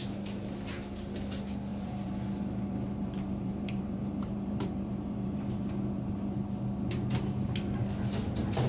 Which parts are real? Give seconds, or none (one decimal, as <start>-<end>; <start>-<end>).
0.0-1.7; 5.4-8.7